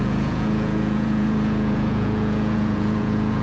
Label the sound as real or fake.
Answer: fake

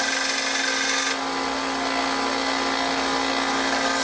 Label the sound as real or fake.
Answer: real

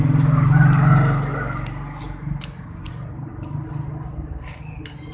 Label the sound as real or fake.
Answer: real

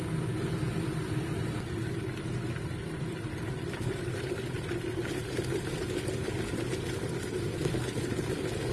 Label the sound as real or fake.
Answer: real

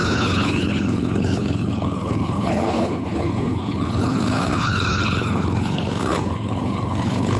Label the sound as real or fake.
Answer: fake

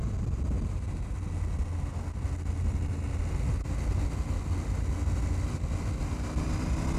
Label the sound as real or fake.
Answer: real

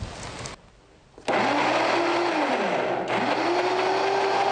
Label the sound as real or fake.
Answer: real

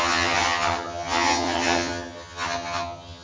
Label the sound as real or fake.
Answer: fake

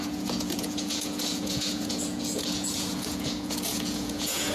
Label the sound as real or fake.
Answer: fake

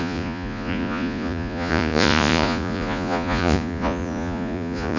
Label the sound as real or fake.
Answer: fake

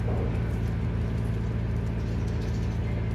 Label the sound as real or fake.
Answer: real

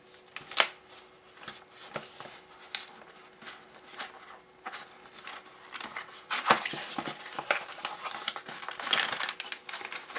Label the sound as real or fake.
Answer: real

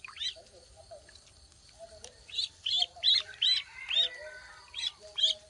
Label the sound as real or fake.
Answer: real